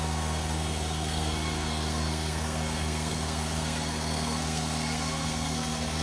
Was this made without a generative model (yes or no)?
no